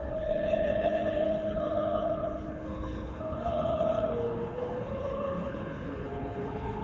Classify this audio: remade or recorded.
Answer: remade